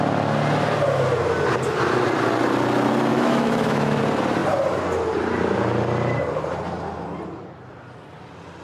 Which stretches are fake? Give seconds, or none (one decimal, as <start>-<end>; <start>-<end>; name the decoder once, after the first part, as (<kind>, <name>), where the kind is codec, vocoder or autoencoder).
3.1-4.0 (autoencoder, DAC-VAE)